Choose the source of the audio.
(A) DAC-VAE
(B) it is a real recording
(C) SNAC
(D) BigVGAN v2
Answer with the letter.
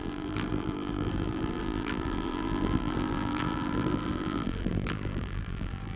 D